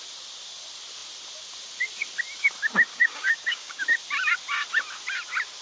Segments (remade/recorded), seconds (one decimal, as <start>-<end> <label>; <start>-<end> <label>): 0.0-2.9 recorded; 2.9-3.8 remade; 3.8-5.6 recorded